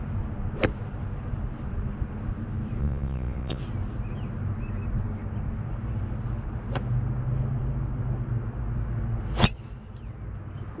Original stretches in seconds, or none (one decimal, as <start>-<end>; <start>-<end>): 0.0-2.8; 3.6-10.8